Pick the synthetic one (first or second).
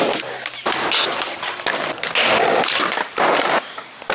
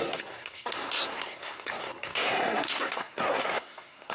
second